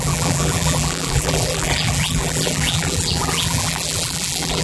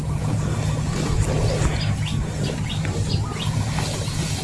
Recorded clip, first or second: second